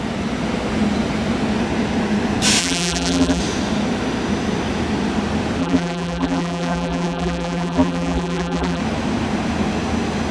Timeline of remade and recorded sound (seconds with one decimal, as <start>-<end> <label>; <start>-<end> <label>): 0.0-2.6 recorded; 2.6-3.4 remade; 3.4-5.6 recorded; 5.6-8.8 remade; 8.8-10.3 recorded